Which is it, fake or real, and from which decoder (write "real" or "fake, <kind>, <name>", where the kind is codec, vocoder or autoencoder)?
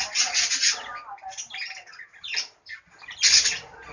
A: real